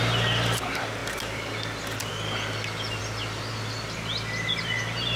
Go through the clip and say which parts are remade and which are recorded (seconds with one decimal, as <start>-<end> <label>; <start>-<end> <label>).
0.0-5.2 recorded